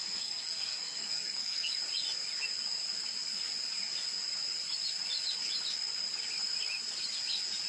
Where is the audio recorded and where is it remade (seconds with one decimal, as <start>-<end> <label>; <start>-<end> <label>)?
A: 0.0-1.7 remade; 1.7-7.7 recorded